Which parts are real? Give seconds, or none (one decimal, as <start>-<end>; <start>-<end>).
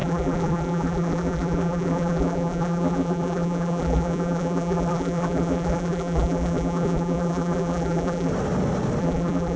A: 8.3-9.0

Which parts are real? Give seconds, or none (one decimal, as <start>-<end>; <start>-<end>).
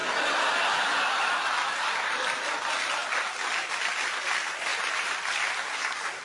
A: 0.0-4.7; 5.7-6.2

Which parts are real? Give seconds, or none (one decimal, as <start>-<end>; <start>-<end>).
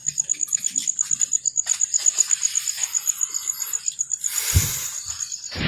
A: 0.0-1.2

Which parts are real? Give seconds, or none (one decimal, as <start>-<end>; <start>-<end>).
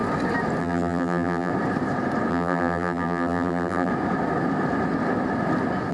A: 0.0-0.6; 1.5-2.3; 3.9-5.9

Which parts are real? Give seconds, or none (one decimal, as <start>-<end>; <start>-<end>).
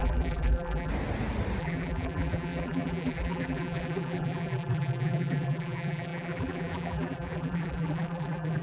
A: 0.9-1.6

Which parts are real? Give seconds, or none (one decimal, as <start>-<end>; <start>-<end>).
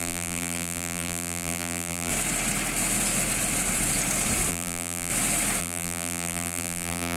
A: 2.1-4.5; 5.1-5.6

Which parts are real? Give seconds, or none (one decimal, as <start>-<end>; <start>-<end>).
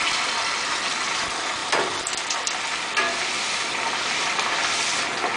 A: 0.0-1.6; 4.8-5.4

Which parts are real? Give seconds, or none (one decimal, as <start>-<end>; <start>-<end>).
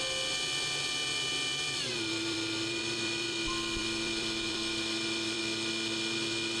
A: 0.0-1.5; 5.4-6.6